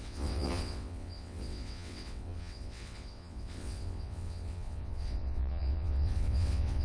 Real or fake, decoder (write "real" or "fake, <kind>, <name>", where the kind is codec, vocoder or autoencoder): fake, vocoder, WaveNeXt